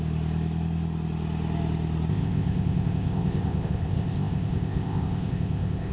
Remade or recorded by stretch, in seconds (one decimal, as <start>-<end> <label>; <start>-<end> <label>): 0.0-2.1 recorded; 2.1-5.9 remade